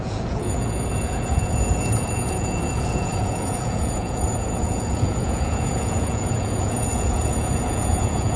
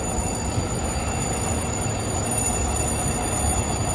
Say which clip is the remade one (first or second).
first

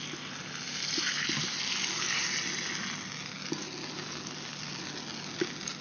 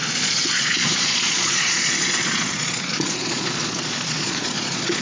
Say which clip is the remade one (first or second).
second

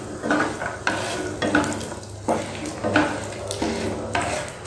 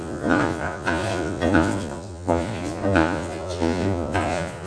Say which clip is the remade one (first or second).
second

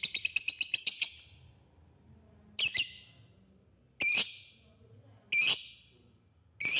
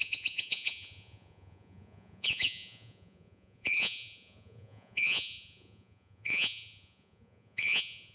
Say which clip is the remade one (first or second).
second